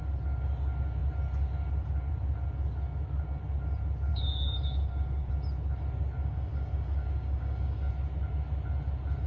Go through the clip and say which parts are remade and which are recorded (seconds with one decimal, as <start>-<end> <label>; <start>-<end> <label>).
0.0-4.1 recorded; 4.1-5.3 remade; 5.3-6.2 recorded; 6.2-7.9 remade; 7.9-9.3 recorded